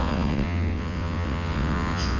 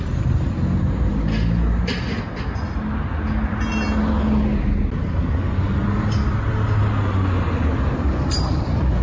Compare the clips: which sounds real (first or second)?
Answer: second